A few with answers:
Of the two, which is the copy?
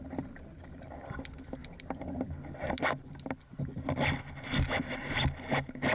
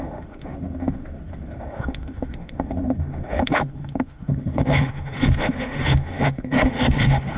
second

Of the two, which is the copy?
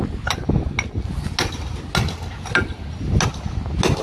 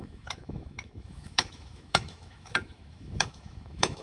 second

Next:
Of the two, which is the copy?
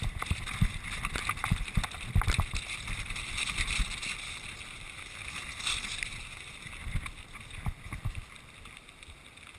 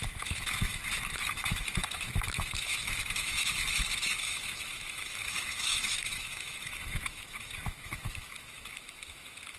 second